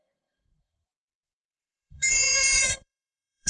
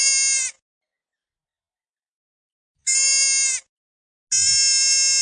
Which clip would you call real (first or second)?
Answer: second